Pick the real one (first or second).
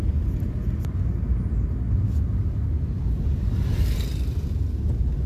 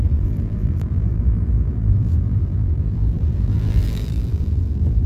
first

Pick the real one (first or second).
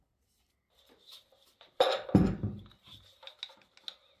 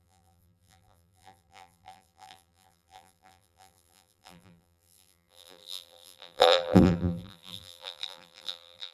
first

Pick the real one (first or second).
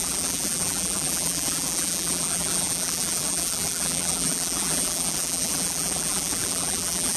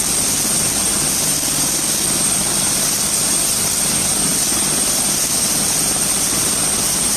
second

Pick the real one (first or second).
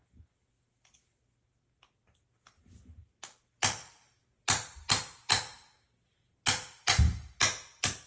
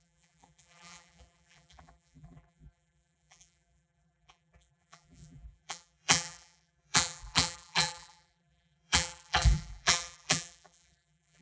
first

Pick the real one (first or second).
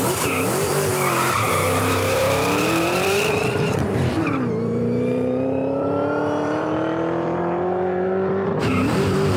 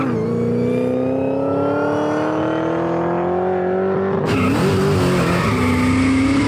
second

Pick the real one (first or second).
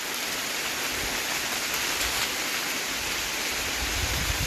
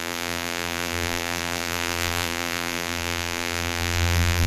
first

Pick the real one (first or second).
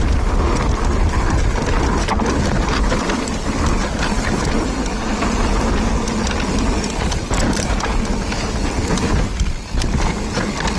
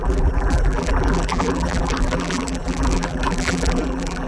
first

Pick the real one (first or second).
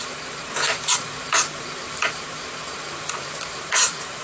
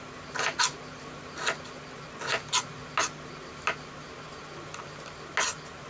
second